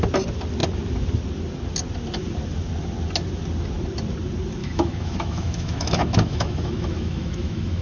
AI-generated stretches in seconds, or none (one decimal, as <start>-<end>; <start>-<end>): 4.6-7.8